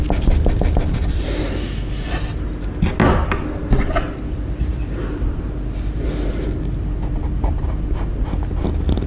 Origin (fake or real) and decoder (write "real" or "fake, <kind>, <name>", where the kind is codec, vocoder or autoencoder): real